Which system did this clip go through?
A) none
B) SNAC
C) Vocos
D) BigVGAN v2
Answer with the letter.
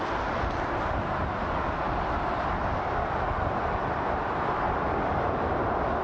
A